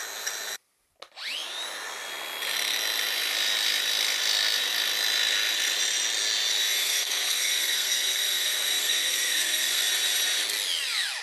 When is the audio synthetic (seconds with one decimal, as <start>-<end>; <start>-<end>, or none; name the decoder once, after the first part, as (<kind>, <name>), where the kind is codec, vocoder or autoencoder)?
6.8-9.8 (codec, SNAC)